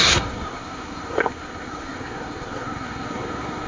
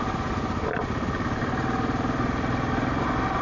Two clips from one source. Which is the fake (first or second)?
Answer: first